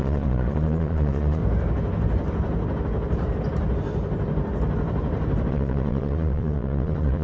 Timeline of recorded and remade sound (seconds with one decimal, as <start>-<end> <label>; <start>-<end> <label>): 0.0-1.4 remade; 1.4-5.5 recorded; 5.5-7.2 remade

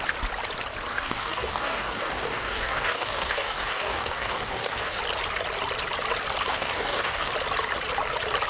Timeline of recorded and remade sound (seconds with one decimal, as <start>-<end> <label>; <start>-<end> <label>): 0.0-0.9 recorded; 0.9-5.0 remade; 5.0-6.5 recorded; 6.5-7.3 remade; 7.3-8.5 recorded